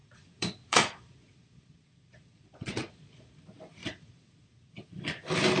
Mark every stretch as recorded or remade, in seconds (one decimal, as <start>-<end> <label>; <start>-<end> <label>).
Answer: 0.0-3.4 remade; 3.4-3.8 recorded; 3.8-4.7 remade; 4.7-5.6 recorded